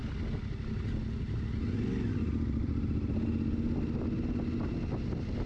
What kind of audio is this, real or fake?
real